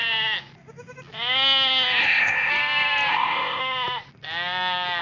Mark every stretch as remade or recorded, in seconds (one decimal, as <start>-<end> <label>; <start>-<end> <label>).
0.0-2.0 recorded; 2.0-2.5 remade; 2.5-3.1 recorded; 3.1-3.6 remade; 3.6-5.0 recorded